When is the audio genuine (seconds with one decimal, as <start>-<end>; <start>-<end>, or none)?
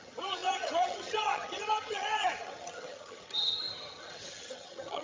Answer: none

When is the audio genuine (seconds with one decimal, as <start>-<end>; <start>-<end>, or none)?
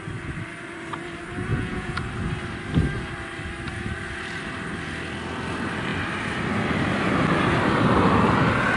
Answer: 0.0-1.5; 2.0-8.8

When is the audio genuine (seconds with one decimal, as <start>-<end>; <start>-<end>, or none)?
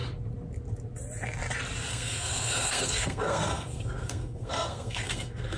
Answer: 0.0-1.9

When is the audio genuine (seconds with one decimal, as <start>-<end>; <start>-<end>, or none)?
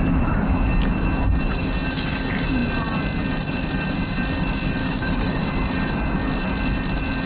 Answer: 0.0-4.8; 5.4-7.3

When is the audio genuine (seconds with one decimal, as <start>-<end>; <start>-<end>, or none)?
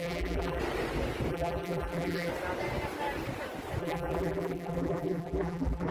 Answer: 0.6-1.3; 2.3-3.8